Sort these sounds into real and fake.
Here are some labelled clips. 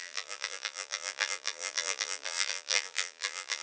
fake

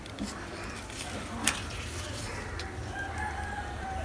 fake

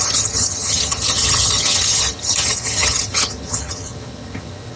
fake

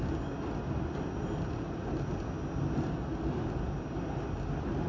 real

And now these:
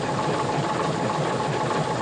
real